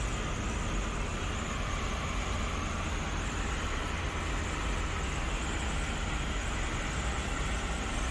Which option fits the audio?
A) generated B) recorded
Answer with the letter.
B